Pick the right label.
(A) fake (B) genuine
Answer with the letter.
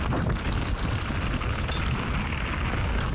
B